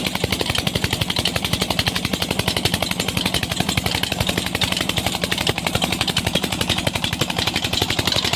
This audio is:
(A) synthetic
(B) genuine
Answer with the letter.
A